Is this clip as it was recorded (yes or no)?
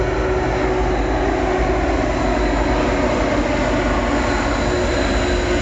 yes